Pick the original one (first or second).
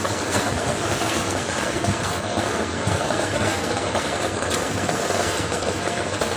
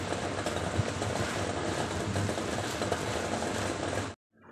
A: second